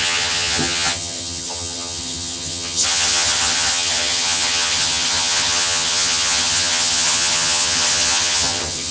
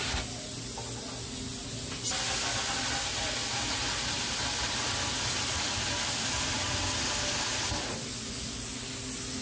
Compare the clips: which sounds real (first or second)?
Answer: second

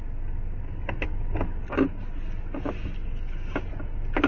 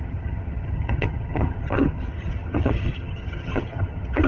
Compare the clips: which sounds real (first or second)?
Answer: first